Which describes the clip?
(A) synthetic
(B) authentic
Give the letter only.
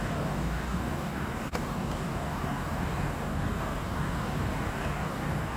A